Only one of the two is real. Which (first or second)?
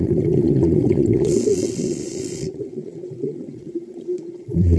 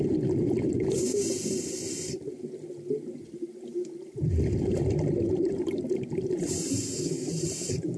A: second